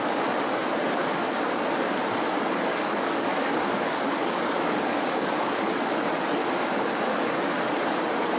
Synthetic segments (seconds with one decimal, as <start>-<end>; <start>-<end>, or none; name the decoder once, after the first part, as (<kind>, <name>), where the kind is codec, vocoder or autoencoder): 2.7-5.6 (codec, DAC); 6.4-6.9

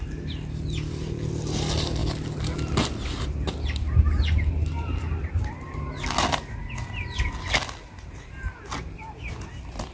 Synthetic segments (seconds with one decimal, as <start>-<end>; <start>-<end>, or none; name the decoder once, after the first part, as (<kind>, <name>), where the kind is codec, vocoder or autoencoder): none